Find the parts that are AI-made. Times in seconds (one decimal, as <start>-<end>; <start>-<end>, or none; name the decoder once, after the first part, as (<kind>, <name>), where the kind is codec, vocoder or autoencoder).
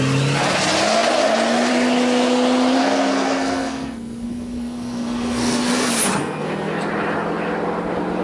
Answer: 2.8-5.7 (codec, SNAC); 6.2-6.8